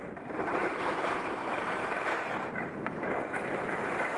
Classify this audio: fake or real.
fake